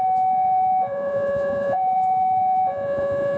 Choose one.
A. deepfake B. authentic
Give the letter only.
A